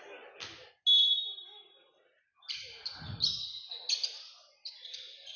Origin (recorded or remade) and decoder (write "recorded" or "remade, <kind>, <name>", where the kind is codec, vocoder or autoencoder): recorded